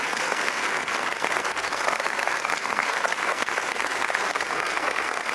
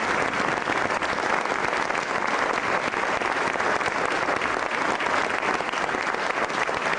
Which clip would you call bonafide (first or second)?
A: second